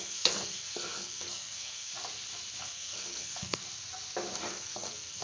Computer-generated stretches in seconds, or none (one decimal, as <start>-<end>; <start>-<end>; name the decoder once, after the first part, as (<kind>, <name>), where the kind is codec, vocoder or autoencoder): 0.0-1.9 (codec, SNAC); 2.6-3.6; 4.5-5.2